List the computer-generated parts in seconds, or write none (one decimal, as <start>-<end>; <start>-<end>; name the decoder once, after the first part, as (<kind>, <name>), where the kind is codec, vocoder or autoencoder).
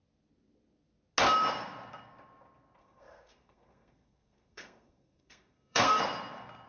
2.8-6.0 (codec, SNAC)